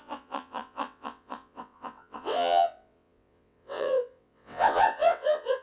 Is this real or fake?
fake